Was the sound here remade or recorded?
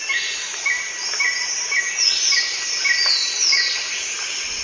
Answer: recorded